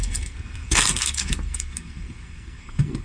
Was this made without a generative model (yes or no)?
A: no